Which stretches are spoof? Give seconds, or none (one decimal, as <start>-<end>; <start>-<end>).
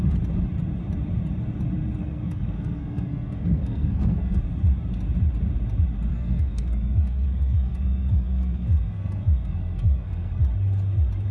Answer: 2.0-4.4; 6.1-10.4